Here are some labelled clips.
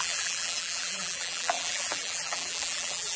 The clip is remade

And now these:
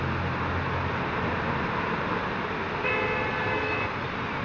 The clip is recorded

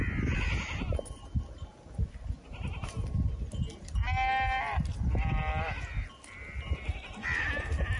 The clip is recorded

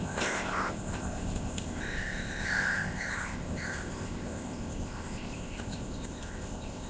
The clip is remade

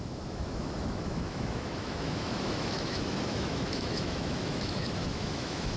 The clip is remade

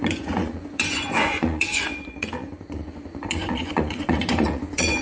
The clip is remade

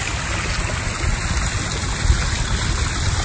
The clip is recorded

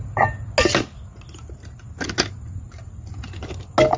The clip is recorded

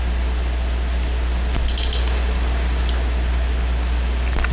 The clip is recorded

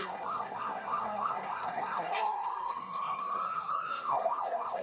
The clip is remade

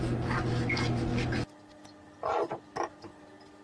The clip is recorded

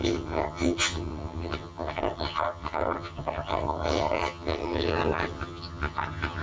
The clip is remade